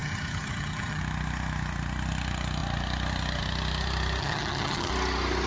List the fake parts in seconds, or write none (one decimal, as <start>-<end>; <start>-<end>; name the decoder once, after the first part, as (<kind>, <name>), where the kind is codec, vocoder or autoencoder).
0.0-1.0 (vocoder, HiFi-GAN); 4.2-4.9